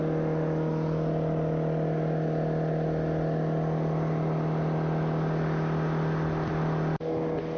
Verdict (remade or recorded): recorded